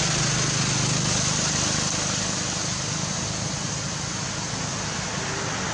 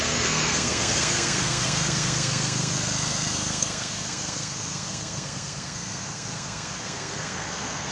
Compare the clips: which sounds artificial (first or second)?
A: second